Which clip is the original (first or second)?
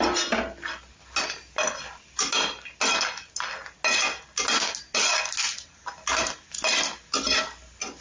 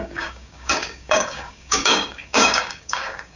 first